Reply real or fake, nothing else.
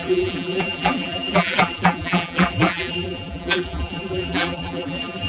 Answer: fake